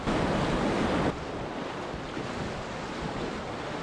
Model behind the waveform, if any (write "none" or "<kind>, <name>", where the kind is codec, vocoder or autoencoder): none